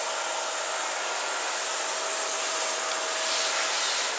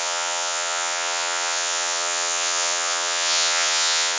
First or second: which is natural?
first